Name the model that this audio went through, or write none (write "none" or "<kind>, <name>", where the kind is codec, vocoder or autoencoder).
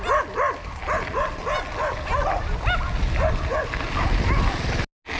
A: none